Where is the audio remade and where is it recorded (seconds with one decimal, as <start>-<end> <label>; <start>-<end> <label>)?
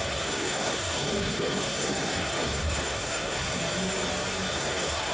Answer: 0.0-3.6 remade; 3.6-4.5 recorded; 4.5-5.1 remade